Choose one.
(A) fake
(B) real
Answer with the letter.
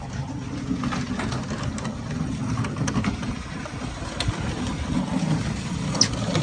B